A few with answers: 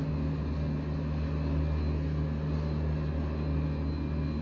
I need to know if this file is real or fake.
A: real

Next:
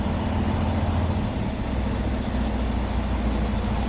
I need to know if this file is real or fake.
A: real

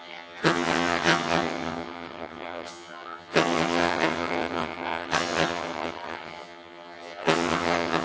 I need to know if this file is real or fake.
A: fake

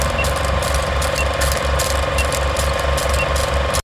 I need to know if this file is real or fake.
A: real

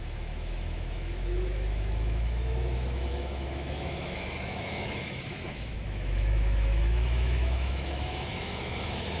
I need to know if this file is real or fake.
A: fake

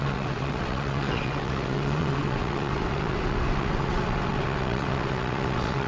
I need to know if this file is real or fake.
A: fake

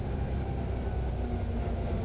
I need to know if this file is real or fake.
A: real